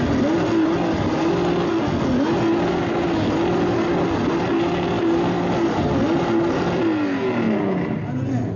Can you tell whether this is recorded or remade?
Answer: recorded